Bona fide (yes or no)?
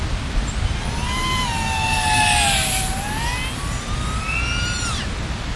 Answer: yes